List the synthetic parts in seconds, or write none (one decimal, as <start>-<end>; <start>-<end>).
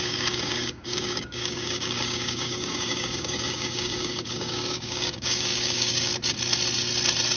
0.0-6.1